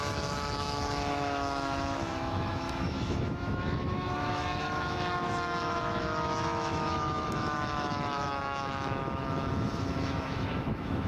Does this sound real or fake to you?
fake